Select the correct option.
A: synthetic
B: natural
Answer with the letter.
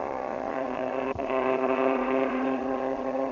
A